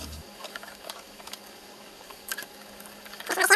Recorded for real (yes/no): no